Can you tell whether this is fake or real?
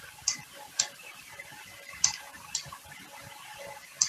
fake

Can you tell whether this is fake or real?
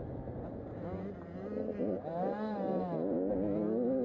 real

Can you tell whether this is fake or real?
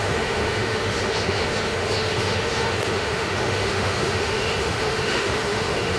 fake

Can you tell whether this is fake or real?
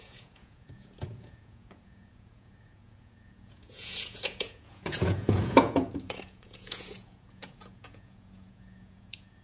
fake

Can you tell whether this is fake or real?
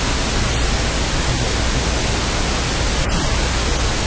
real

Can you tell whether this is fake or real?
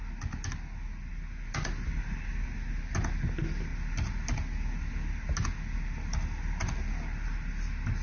real